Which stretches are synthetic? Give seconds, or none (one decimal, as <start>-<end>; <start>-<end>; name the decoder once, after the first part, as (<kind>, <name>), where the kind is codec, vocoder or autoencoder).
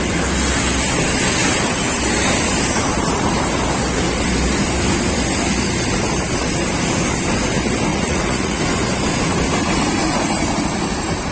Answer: 7.9-8.6 (vocoder, Vocos)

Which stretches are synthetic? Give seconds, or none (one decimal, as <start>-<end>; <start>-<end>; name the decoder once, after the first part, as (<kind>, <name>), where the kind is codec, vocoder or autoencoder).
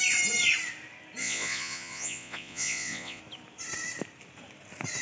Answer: 1.2-3.2 (vocoder, Vocos)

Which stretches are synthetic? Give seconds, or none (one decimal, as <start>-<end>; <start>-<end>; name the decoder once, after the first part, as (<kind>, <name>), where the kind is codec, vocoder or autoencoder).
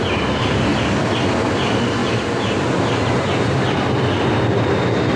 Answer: none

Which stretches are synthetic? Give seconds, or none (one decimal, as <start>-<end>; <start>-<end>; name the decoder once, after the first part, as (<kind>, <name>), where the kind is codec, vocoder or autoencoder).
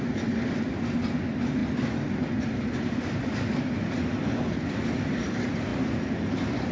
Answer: none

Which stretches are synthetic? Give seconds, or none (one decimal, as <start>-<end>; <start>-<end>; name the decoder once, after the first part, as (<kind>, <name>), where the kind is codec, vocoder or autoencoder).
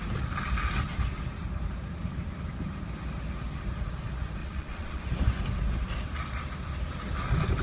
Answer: 4.4-5.0 (vocoder, Vocos)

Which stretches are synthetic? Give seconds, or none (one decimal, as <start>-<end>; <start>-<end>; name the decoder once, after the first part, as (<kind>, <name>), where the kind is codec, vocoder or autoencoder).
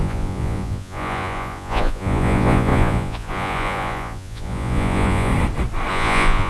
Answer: 0.0-5.3 (vocoder, Vocos); 5.9-6.5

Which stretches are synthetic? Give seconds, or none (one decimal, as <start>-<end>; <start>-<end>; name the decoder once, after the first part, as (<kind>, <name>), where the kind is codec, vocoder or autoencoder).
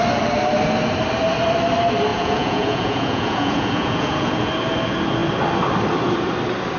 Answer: 2.1-4.5 (vocoder, Vocos)